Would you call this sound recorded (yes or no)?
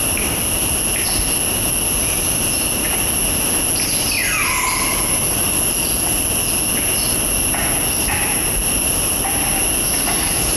yes